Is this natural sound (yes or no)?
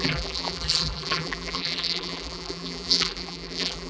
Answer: no